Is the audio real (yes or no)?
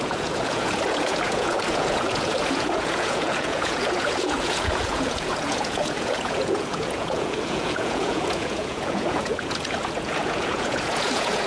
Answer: no